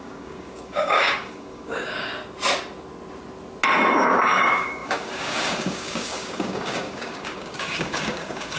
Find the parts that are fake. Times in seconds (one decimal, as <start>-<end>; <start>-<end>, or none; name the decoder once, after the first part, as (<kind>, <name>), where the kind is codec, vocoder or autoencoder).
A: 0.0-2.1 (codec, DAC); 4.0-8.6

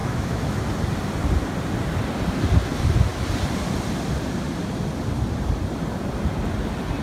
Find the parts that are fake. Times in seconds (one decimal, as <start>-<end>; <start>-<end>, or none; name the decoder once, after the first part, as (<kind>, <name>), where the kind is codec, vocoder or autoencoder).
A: 0.0-0.6 (autoencoder, DAC-VAE)

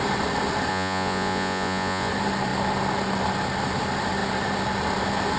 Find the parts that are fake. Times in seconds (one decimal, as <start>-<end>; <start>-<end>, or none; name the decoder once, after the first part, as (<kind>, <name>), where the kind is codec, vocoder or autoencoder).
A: 0.7-2.1 (vocoder, Vocos)

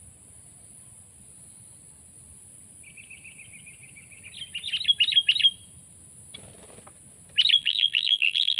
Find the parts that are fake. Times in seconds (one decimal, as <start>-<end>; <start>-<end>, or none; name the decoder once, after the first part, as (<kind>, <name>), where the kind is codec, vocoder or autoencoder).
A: 7.6-8.6 (vocoder, BigVGAN v2)

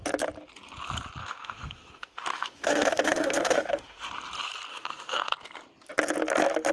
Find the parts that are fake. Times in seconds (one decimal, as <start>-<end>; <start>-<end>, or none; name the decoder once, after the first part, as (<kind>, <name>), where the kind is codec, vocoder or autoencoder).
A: 1.2-4.1 (autoencoder, DAC-VAE); 4.7-5.3

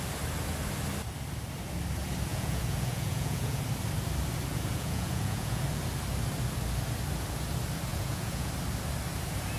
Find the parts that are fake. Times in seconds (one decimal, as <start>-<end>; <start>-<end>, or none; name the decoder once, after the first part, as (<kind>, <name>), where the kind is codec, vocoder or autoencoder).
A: 2.3-3.6 (vocoder, Vocos); 4.5-5.6; 7.9-8.5

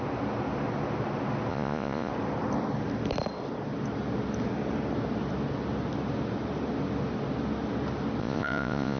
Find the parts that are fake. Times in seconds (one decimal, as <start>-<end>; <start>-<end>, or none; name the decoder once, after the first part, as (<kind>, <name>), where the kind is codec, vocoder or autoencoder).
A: 1.5-2.1 (vocoder, Vocos); 8.2-9.0

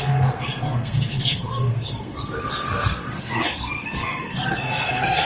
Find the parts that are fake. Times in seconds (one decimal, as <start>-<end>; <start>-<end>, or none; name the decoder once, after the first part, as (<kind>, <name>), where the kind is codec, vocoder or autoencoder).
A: 0.0-5.3 (codec, SNAC)